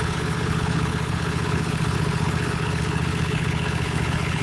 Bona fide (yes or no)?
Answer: no